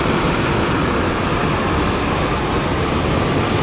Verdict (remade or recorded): recorded